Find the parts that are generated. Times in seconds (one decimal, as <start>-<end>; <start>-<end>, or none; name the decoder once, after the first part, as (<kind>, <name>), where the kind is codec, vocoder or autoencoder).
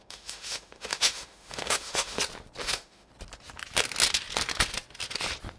0.0-2.2 (autoencoder, DAC-VAE); 2.6-3.1